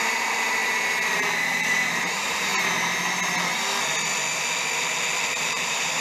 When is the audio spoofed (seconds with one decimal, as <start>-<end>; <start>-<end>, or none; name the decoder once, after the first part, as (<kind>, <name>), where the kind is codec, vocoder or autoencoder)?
0.0-2.5 (vocoder, BigVGAN v2); 5.4-6.0